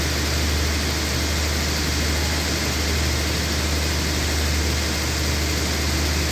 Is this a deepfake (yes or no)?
no